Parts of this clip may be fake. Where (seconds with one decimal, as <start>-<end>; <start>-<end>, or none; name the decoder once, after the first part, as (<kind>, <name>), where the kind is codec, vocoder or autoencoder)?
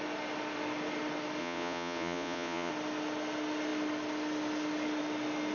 1.4-2.7 (vocoder, Vocos)